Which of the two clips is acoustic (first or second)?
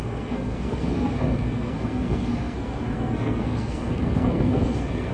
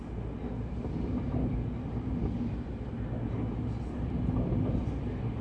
second